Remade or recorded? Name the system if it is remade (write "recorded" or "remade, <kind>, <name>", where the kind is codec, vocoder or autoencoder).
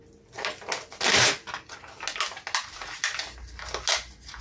recorded